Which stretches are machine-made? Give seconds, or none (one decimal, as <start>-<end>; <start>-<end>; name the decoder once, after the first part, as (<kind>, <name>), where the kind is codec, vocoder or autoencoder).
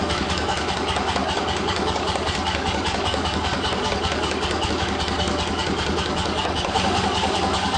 0.0-7.8 (codec, DAC)